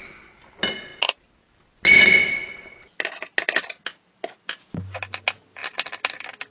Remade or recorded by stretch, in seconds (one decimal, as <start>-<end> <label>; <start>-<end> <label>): 0.0-6.5 recorded